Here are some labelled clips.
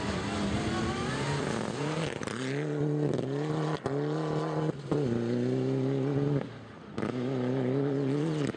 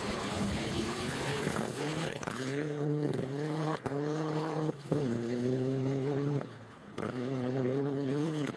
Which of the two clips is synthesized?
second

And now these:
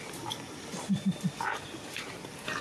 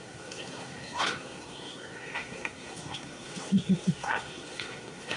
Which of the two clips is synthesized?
second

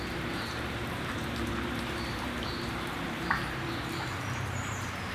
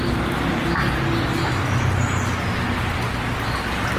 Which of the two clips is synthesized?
first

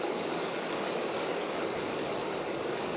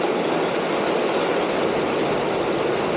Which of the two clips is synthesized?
first